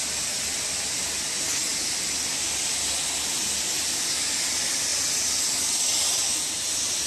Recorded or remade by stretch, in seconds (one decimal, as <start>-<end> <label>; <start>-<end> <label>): 0.0-7.1 recorded